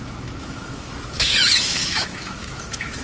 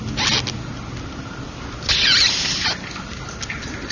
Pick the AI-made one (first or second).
first